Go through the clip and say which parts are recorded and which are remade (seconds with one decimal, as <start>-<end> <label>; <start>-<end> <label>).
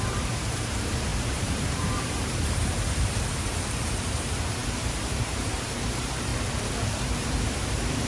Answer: 0.0-6.3 remade; 6.3-6.9 recorded; 6.9-8.1 remade